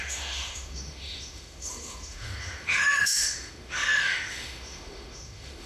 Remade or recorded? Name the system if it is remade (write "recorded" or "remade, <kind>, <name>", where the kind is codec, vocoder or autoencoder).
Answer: remade, autoencoder, DAC-VAE